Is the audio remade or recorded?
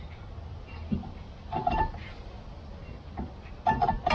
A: recorded